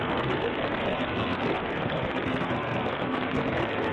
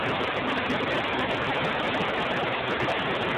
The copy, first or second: first